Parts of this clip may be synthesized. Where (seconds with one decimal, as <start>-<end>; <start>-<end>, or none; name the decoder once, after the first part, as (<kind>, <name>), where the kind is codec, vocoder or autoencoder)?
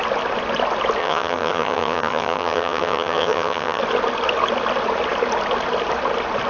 1.0-3.8 (vocoder, HiFi-GAN)